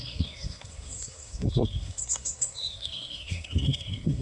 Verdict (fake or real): fake